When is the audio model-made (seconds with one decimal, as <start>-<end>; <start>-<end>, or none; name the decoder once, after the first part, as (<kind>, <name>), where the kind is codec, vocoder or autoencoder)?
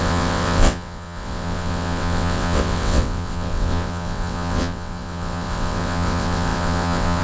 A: 0.0-7.2 (vocoder, WaveNeXt)